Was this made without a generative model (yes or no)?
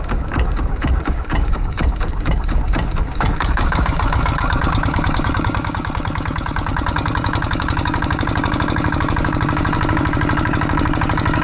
no